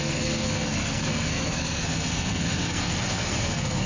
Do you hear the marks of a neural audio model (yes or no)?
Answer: yes